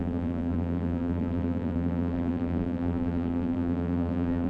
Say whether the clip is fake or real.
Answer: fake